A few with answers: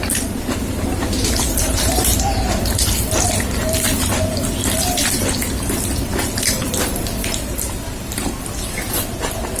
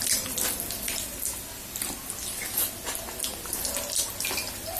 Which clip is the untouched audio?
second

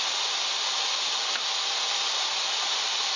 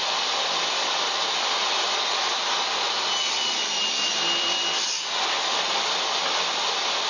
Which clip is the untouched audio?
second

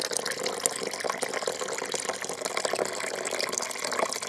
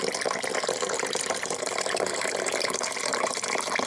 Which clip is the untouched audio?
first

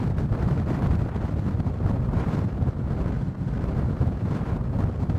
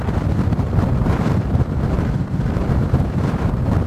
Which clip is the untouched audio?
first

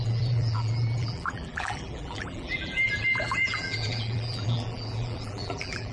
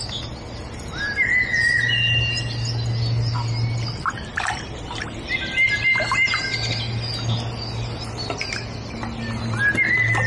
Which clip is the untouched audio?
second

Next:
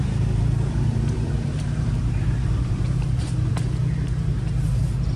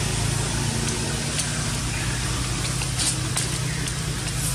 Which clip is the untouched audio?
second